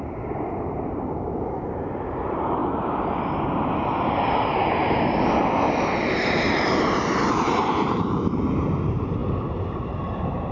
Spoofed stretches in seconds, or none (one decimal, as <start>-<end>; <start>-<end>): 0.0-2.6; 7.3-10.5

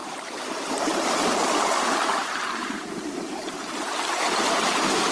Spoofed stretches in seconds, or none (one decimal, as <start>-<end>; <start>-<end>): 0.0-5.1